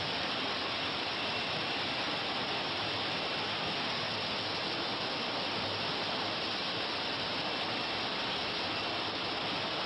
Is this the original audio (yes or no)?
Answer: yes